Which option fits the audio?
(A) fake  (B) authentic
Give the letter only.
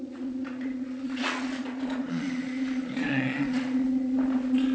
A